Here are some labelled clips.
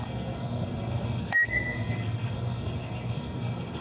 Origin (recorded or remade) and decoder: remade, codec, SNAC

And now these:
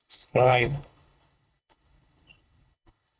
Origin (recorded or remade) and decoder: remade, codec, HILCodec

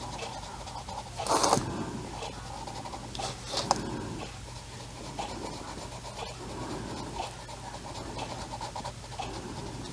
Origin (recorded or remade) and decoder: recorded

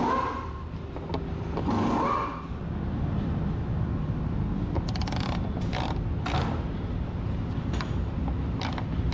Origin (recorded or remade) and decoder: recorded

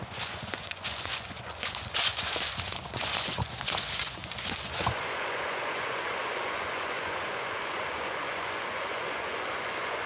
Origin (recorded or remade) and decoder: remade, vocoder, Vocos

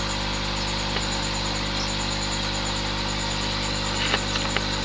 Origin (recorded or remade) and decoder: recorded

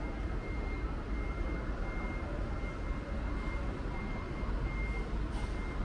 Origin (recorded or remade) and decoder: recorded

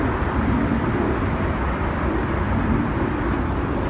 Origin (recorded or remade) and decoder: recorded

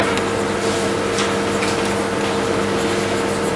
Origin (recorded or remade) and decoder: recorded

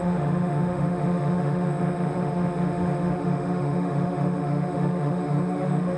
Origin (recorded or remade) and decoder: remade, autoencoder, DAC-VAE